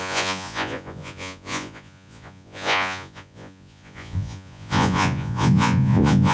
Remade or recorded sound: remade